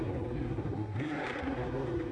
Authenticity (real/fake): fake